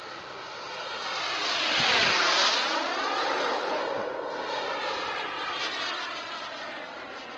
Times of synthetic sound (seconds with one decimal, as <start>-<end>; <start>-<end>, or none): 3.2-3.8